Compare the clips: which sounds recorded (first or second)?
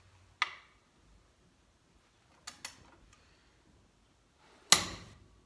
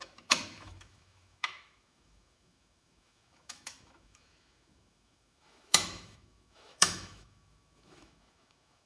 first